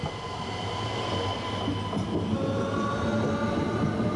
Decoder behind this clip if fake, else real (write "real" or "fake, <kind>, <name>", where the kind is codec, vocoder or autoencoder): real